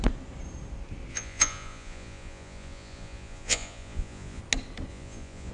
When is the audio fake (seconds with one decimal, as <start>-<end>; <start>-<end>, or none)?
1.1-4.4; 4.9-5.5